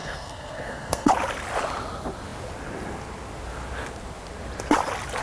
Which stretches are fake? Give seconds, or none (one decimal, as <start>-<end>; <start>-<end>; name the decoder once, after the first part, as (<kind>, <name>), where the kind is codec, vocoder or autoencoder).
0.0-1.1 (codec, SNAC)